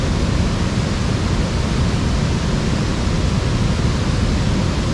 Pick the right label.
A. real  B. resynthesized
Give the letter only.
A